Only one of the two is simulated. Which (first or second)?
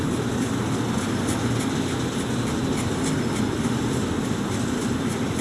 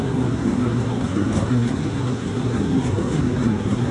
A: second